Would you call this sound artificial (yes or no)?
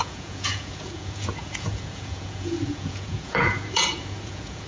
yes